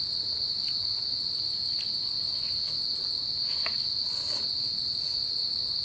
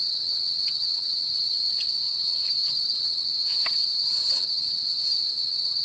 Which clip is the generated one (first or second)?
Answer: second